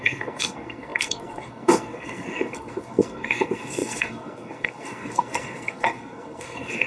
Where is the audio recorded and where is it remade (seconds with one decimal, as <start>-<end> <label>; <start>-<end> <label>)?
0.0-6.9 remade